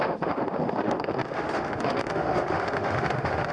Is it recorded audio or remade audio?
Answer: remade